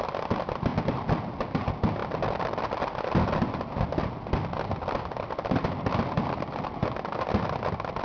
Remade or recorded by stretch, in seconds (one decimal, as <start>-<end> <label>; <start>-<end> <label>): 0.0-8.0 recorded